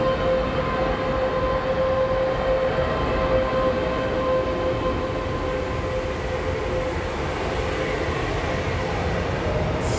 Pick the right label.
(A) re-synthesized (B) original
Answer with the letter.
B